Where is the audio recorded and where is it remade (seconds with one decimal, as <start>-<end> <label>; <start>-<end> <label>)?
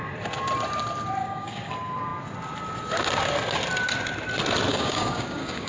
0.0-1.2 recorded; 1.2-1.7 remade; 1.7-4.7 recorded; 4.7-5.7 remade